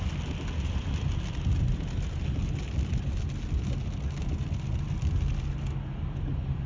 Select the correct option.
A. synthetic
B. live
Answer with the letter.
B